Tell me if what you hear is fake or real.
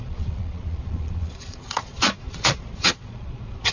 fake